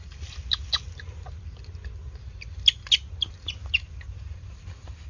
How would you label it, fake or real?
real